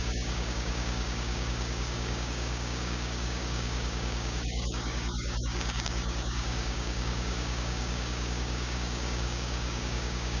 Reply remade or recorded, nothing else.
remade